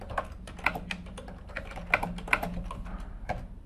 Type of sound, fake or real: real